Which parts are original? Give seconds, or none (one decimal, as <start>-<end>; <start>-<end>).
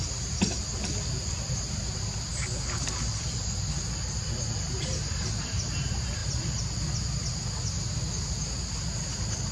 0.0-9.5